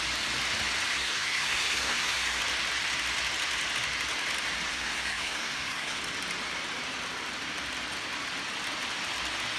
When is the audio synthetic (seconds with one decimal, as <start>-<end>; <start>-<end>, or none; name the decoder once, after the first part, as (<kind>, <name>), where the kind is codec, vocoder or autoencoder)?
0.9-2.4 (codec, SNAC); 4.7-6.0